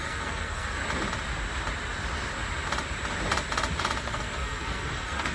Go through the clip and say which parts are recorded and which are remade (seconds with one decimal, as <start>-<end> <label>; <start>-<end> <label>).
0.0-0.8 remade; 0.8-4.0 recorded; 4.0-5.3 remade